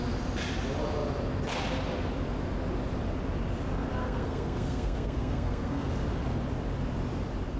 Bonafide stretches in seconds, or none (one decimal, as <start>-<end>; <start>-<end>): 0.0-4.0; 5.9-7.6